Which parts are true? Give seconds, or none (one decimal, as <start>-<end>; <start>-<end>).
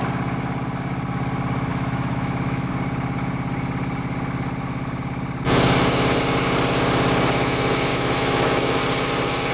0.0-1.7; 2.7-7.9; 8.8-9.5